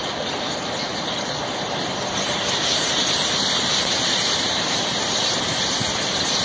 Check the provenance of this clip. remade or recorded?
remade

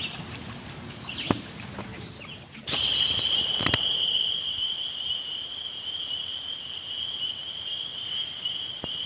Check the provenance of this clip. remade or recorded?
remade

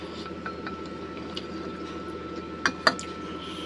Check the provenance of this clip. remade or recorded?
recorded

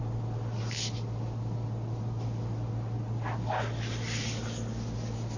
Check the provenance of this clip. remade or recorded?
recorded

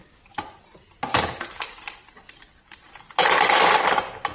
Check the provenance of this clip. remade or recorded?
recorded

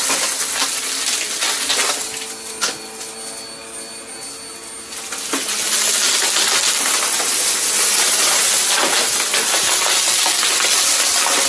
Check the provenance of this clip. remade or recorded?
recorded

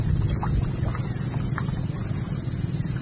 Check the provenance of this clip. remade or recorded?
recorded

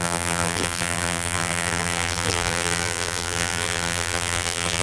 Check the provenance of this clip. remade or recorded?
remade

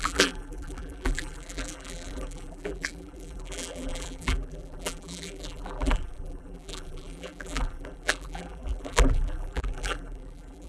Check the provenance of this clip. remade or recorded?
remade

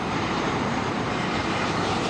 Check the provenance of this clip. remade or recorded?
remade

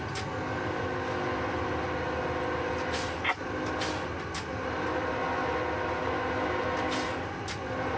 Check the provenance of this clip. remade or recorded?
recorded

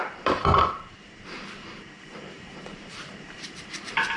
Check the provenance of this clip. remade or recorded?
remade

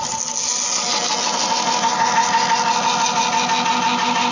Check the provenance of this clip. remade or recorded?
recorded